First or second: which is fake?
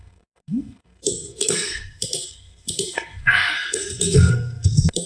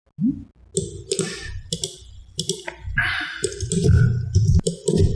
first